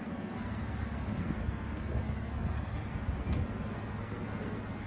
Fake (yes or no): yes